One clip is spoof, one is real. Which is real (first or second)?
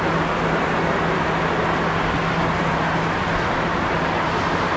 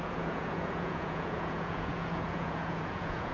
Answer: first